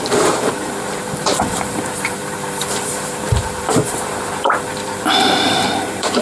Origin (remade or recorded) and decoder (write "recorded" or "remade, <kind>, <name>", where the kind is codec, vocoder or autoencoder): remade, vocoder, BigVGAN v2